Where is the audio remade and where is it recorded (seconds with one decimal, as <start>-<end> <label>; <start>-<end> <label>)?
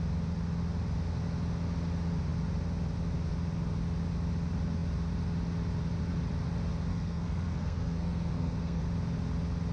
0.0-6.9 recorded; 6.9-8.8 remade; 8.8-9.7 recorded